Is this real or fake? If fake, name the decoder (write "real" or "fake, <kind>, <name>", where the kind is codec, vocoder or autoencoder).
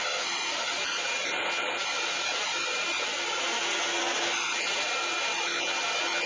real